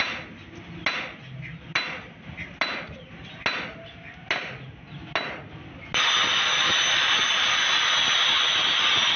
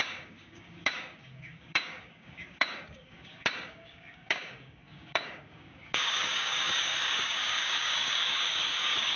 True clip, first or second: first